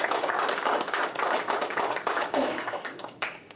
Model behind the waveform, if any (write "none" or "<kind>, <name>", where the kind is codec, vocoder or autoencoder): codec, DAC